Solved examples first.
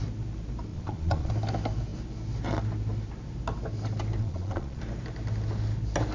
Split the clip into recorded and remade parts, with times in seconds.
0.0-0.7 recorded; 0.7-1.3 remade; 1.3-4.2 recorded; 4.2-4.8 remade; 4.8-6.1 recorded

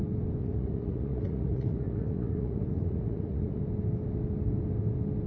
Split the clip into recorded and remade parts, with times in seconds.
0.0-0.4 recorded; 0.4-3.6 remade; 3.6-5.3 recorded